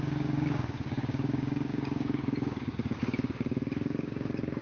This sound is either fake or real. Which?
fake